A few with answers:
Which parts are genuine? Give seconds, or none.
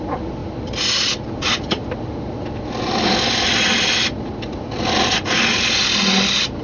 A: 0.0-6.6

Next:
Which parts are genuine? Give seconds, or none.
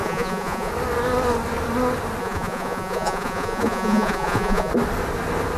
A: 0.7-2.2; 4.7-5.6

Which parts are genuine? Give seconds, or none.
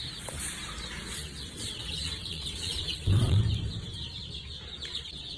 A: 0.0-1.1; 3.4-5.4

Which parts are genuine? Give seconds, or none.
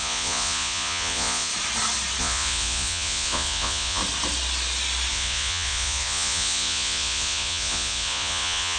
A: 1.5-2.2; 4.0-5.1